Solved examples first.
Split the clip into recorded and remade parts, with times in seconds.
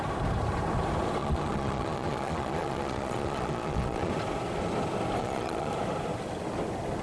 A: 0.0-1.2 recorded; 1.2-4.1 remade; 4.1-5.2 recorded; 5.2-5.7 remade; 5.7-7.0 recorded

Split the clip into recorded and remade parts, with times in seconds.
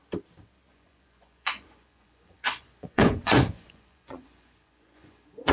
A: 0.0-0.7 recorded; 0.7-5.5 remade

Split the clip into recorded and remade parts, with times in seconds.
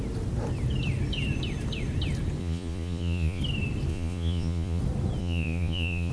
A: 0.0-2.4 recorded; 2.4-3.4 remade; 3.4-3.9 recorded; 3.9-4.8 remade; 4.8-5.2 recorded; 5.2-6.1 remade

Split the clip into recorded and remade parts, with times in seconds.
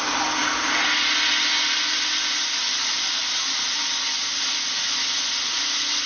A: 0.0-6.1 recorded